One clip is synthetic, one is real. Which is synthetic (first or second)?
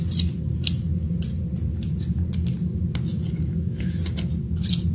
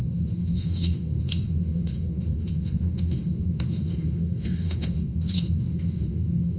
second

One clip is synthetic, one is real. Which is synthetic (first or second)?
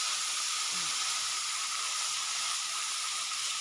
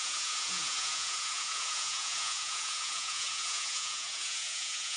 second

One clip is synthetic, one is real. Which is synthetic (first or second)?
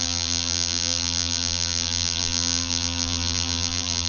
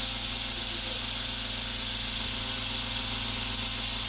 first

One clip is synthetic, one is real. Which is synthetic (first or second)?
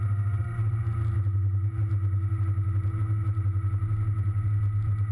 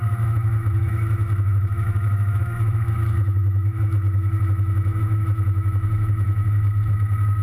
second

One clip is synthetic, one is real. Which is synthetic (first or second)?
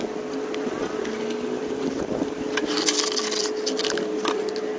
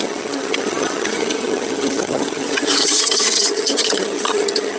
second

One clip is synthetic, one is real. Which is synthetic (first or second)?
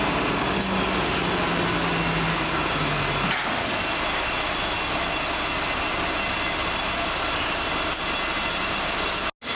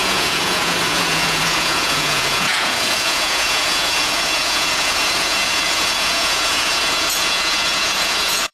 second